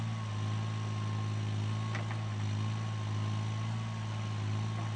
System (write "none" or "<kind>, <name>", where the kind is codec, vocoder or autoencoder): none